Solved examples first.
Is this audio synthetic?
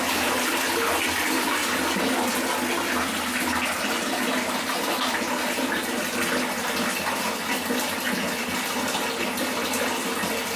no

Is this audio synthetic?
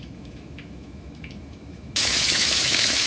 yes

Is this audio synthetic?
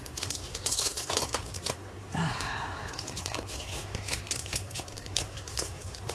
yes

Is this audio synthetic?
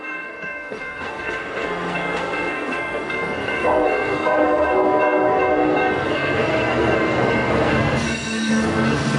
yes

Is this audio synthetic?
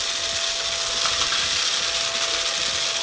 no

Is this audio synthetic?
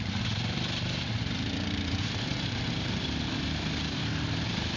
yes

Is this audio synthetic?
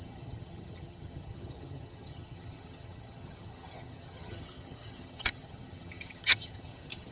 yes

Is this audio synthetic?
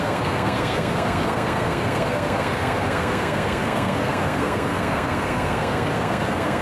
yes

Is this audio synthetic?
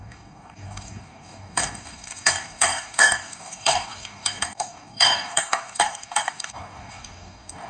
yes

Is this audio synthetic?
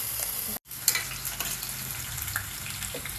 no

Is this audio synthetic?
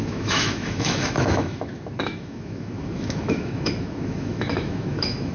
yes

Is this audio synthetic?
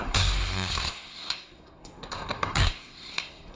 yes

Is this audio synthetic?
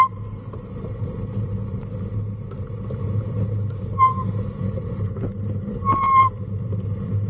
no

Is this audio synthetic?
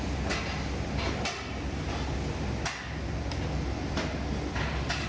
no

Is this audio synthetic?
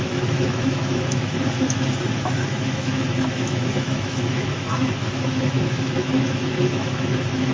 yes